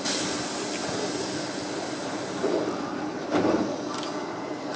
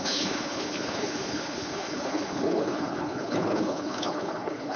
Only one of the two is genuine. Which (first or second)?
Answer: first